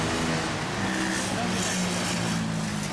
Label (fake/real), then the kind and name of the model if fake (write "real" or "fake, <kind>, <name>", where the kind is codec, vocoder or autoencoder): real